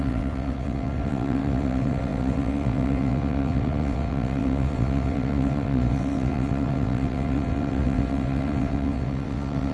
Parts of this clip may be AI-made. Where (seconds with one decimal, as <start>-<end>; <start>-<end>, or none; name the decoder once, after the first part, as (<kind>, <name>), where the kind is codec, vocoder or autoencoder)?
0.0-9.7 (vocoder, WaveNeXt)

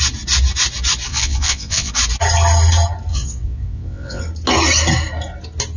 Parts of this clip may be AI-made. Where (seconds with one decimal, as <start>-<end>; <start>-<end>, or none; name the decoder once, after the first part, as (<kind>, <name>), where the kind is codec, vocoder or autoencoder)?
1.1-1.9 (vocoder, WaveNeXt); 3.1-4.2

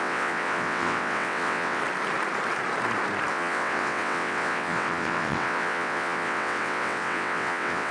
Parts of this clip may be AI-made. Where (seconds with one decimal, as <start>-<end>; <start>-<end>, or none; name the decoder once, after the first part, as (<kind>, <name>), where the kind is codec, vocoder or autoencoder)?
0.0-1.8 (vocoder, WaveNeXt); 3.3-7.9

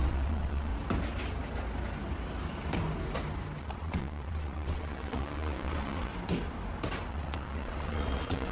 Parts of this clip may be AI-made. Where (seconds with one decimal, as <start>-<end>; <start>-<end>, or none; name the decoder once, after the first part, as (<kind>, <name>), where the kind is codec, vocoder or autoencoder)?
0.0-0.7 (vocoder, WaveNeXt); 3.6-6.1; 7.1-8.5